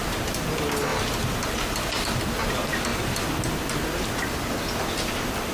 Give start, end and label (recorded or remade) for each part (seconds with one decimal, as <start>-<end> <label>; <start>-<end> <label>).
0.0-5.5 recorded